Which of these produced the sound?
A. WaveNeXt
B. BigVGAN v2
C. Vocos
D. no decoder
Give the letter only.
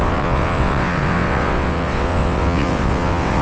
A